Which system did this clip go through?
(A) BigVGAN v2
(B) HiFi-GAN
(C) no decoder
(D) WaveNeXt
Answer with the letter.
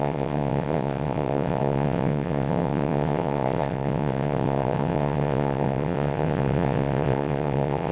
D